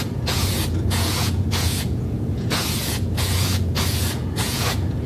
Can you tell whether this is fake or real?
fake